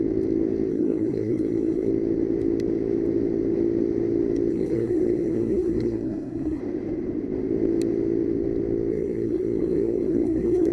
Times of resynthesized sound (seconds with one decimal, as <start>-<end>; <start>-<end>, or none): 0.7-1.9; 4.5-6.6; 8.9-10.7